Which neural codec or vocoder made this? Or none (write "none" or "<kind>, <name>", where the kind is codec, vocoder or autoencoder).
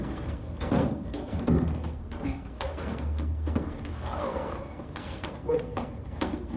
codec, SNAC